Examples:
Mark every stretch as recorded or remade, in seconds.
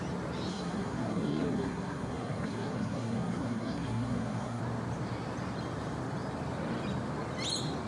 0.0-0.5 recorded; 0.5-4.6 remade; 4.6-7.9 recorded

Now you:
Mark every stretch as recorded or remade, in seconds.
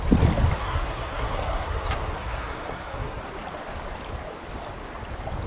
0.0-0.6 recorded; 0.6-3.2 remade; 3.2-5.5 recorded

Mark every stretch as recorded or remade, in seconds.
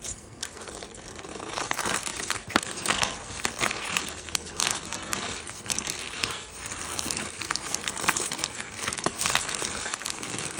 0.0-10.6 remade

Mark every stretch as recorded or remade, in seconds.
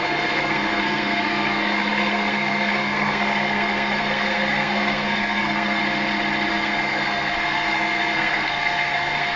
0.0-5.8 remade; 5.8-6.5 recorded; 6.5-9.4 remade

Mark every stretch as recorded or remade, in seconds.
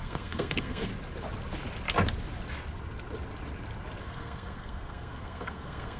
0.0-0.9 remade; 0.9-4.0 recorded; 4.0-6.0 remade